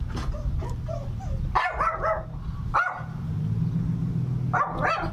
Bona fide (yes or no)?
yes